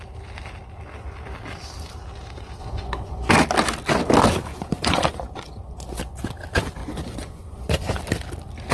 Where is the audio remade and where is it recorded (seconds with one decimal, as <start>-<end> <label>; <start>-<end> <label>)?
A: 0.0-2.6 recorded; 2.6-3.3 remade; 3.3-4.5 recorded; 4.5-6.0 remade; 6.0-6.8 recorded; 6.8-8.0 remade; 8.0-8.7 recorded